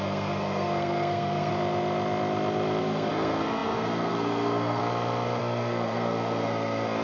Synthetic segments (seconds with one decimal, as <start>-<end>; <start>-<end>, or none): 0.0-1.5; 2.8-4.8; 5.4-7.0